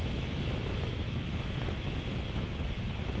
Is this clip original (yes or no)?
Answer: no